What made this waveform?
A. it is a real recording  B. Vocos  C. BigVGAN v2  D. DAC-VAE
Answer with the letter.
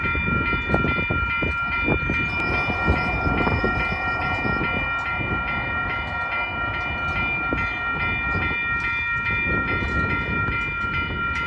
A